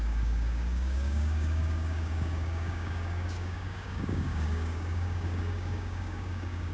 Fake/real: fake